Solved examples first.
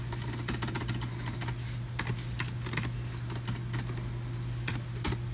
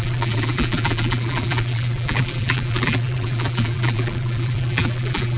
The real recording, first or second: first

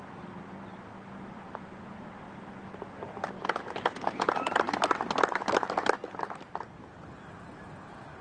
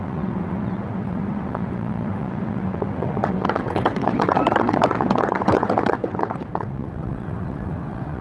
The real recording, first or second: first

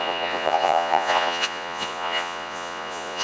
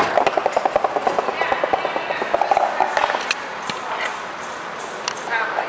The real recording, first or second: second